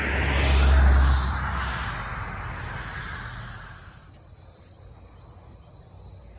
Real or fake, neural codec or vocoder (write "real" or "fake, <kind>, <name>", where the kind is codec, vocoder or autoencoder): real